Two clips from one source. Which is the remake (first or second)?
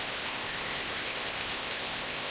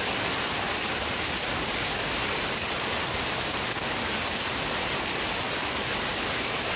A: first